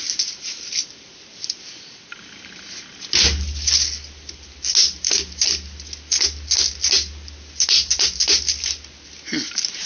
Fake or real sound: real